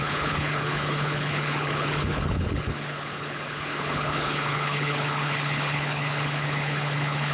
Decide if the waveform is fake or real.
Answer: fake